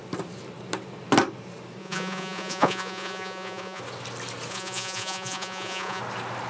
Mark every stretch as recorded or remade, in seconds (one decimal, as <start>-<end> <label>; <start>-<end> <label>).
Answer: 0.0-1.8 recorded; 1.8-3.8 remade; 3.8-4.5 recorded; 4.5-6.0 remade; 6.0-6.5 recorded